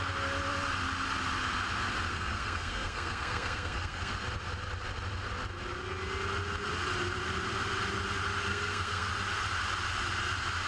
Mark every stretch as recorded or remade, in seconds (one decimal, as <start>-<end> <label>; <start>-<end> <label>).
0.0-2.1 recorded; 2.1-4.1 remade; 4.1-8.5 recorded; 8.5-9.1 remade; 9.1-10.7 recorded